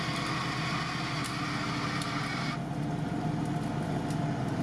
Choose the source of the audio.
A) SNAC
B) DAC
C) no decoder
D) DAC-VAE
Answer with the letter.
C